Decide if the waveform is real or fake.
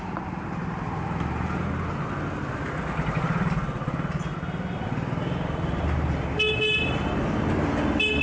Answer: real